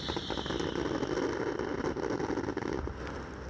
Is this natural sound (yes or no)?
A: yes